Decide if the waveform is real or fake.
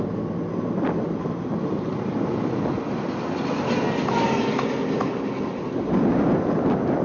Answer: real